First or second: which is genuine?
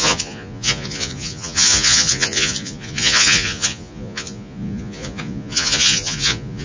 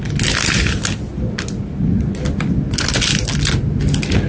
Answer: second